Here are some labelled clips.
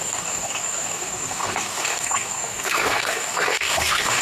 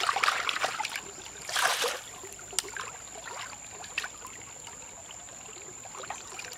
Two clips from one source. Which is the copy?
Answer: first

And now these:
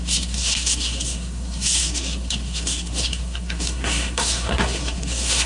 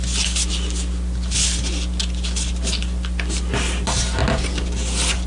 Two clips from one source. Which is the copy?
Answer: first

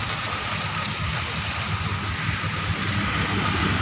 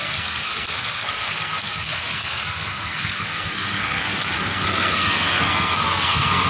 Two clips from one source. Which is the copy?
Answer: second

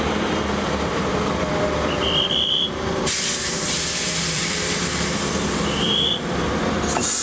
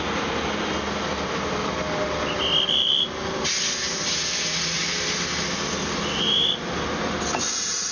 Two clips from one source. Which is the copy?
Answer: first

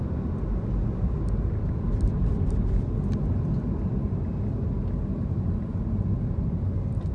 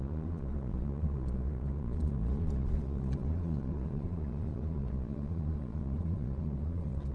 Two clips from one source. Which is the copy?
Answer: second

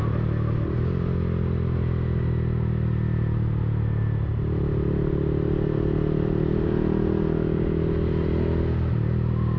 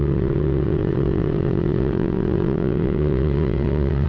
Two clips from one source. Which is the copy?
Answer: second